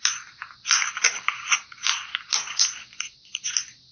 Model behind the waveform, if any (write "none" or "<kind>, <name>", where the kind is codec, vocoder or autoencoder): none